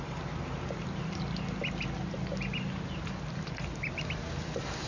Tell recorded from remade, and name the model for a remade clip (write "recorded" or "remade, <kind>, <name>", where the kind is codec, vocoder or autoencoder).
recorded